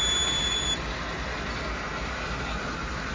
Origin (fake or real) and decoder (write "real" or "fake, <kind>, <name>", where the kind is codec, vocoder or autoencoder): real